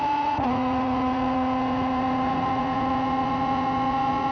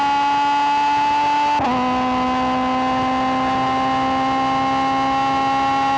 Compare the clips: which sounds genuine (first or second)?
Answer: second